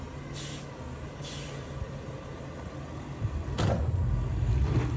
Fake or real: real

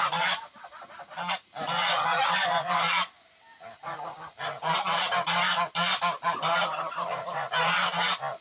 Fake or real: real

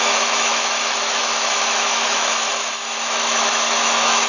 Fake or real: fake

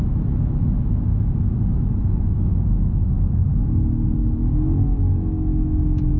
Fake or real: fake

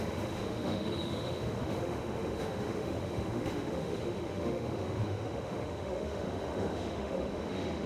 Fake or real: fake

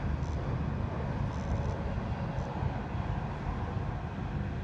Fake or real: real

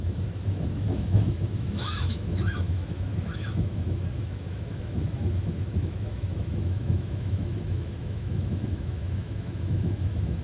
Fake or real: fake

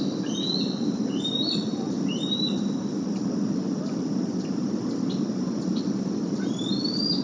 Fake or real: real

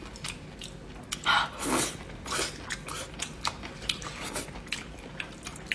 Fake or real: real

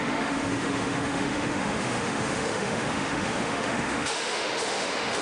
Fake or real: fake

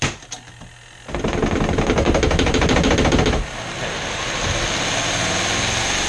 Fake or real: real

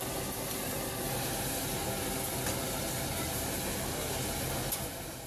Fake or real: real